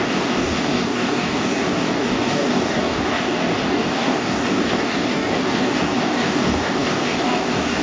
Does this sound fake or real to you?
fake